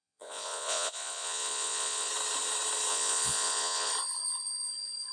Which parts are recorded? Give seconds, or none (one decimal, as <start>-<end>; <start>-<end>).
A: 2.1-2.9; 3.9-5.1